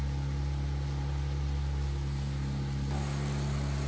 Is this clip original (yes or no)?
yes